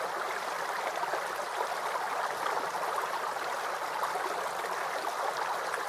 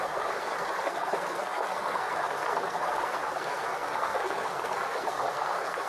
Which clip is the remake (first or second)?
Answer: second